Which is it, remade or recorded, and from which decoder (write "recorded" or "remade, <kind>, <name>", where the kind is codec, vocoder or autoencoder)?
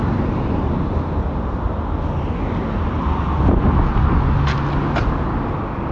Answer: recorded